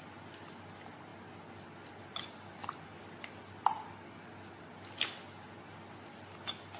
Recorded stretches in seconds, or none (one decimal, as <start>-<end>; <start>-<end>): 0.0-6.8